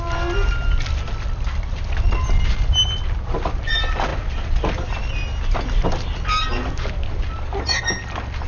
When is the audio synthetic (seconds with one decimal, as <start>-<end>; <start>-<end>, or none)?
none

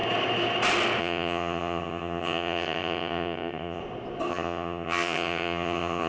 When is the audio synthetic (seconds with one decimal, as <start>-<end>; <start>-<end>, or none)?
1.0-3.8; 4.3-6.1

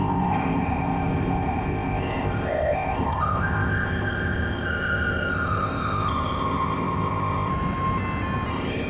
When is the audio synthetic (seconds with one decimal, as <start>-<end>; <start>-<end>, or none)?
0.0-7.5; 8.5-8.9

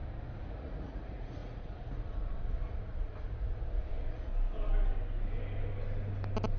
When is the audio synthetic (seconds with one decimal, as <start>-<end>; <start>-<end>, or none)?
0.5-4.3

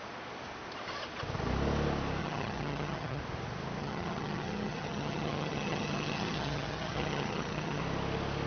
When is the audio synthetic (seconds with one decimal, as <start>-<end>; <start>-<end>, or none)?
2.2-3.2; 3.8-7.8